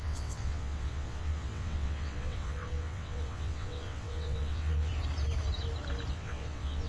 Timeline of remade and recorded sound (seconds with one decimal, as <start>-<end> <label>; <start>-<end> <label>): 0.0-4.9 remade; 4.9-6.1 recorded; 6.1-6.9 remade